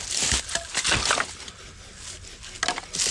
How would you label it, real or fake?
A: real